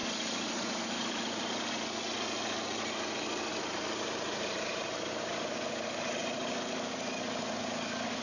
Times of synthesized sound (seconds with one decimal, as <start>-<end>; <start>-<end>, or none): 0.0-1.5; 3.5-5.1